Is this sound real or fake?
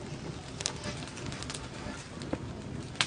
real